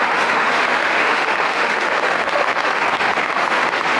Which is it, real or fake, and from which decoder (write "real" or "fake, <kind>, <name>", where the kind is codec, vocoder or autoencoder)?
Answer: fake, autoencoder, DAC-VAE